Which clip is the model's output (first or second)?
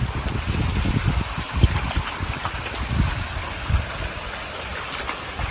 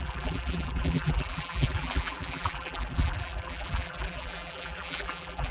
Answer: second